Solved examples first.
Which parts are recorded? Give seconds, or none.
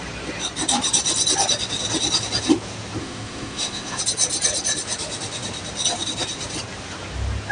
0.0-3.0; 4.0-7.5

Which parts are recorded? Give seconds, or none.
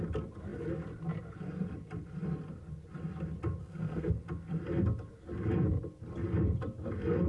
0.0-3.6; 4.1-7.3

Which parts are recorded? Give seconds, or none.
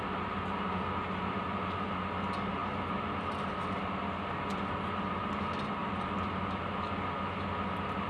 0.0-8.1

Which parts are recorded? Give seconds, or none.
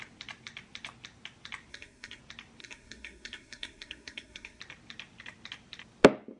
0.0-1.7; 2.2-2.6; 4.6-6.4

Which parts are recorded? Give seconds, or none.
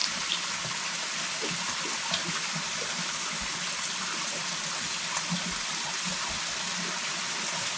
4.7-7.8